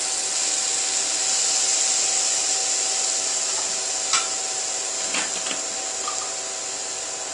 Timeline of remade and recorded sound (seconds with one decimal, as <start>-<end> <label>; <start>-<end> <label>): 0.0-7.3 recorded